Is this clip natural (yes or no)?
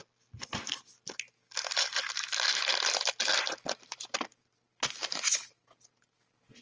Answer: yes